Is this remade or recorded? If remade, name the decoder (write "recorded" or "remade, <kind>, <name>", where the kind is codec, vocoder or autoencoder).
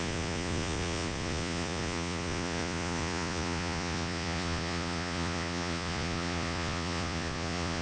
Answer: remade, vocoder, Vocos